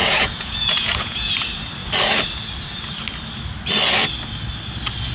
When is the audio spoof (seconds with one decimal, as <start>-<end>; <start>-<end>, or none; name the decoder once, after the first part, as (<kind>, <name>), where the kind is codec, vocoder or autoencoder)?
0.0-1.3 (vocoder, Vocos)